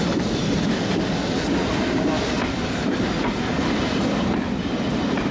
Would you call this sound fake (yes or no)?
no